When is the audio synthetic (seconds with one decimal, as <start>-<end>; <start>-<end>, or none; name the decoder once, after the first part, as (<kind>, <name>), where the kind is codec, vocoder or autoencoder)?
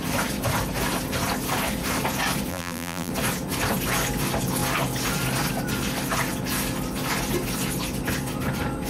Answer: 2.5-3.1 (vocoder, BigVGAN v2)